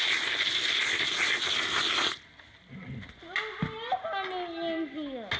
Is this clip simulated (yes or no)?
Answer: no